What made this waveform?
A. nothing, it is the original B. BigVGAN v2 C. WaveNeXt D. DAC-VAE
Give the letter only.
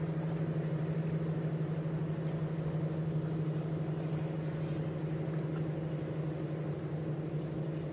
A